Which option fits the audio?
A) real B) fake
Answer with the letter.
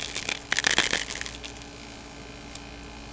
A